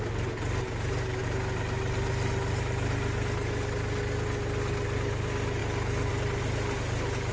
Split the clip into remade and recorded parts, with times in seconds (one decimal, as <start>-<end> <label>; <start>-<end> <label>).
0.0-7.3 recorded